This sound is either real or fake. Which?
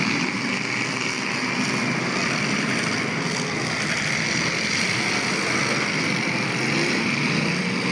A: real